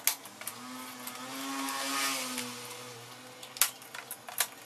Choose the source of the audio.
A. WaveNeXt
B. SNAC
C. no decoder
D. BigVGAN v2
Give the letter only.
C